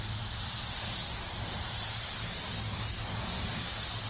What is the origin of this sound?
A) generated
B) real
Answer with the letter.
B